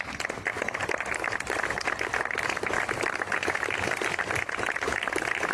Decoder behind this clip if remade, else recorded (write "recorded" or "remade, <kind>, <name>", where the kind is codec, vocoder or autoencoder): recorded